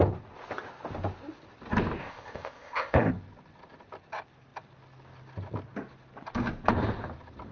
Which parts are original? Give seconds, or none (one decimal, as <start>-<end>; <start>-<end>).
0.0-2.0; 3.1-7.5